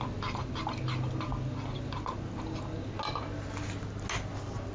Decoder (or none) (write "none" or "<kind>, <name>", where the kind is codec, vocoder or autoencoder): none